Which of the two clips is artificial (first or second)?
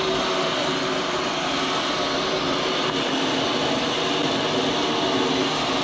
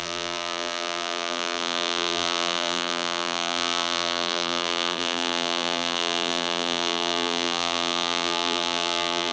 second